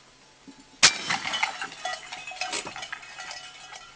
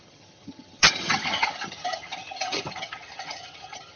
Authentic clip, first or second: first